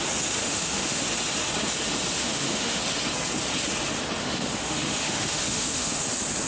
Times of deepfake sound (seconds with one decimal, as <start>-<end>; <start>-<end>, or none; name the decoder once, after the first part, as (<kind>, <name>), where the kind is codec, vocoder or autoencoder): 0.4-1.0 (autoencoder, DAC-VAE); 2.2-2.8; 4.2-6.0